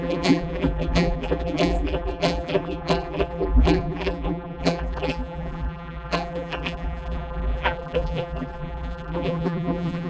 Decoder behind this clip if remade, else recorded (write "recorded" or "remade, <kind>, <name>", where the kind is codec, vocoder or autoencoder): remade, vocoder, BigVGAN v2